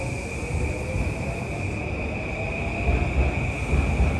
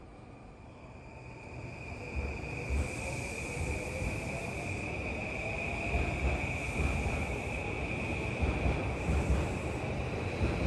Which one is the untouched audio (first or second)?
first